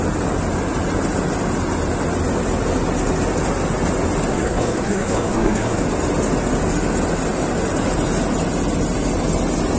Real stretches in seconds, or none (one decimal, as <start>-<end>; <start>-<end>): 0.0-4.3; 5.8-9.8